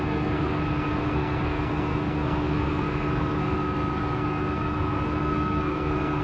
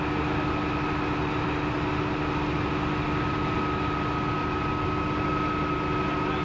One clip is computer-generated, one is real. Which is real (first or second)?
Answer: second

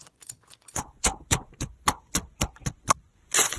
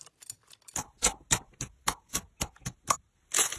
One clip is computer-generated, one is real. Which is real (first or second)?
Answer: second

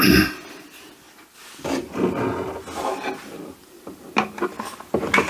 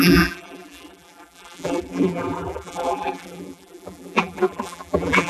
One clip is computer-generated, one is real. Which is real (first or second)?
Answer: first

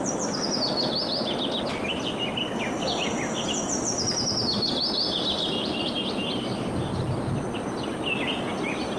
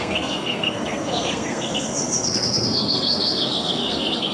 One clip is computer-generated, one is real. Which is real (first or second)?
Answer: first